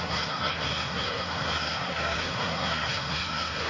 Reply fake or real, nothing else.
fake